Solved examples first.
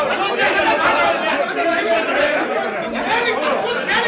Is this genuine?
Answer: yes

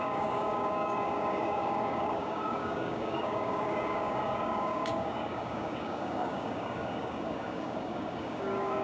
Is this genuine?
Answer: no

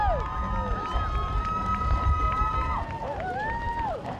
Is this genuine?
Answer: yes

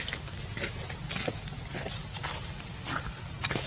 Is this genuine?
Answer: yes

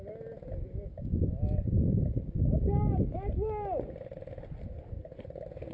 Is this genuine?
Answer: yes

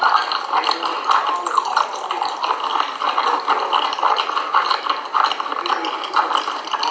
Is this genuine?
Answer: yes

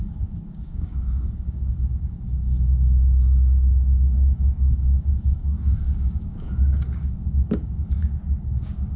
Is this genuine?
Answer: no